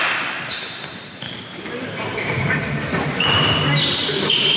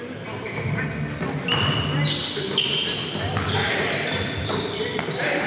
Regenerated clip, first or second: first